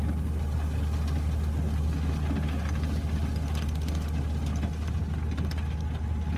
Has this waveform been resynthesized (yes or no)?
no